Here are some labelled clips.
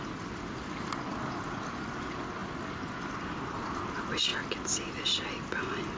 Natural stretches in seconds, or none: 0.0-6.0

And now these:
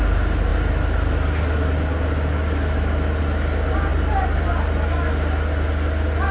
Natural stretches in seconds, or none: 0.0-6.3

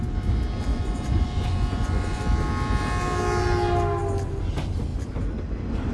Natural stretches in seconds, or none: 0.0-0.7; 2.2-5.9

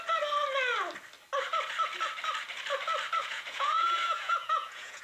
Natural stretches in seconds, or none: 0.0-3.2